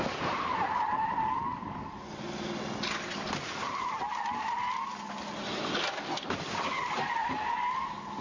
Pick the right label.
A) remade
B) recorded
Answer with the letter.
B